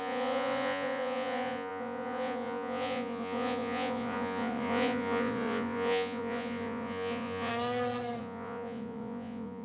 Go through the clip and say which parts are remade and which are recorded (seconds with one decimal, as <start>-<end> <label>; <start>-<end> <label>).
0.0-7.5 remade; 7.5-8.2 recorded; 8.2-9.6 remade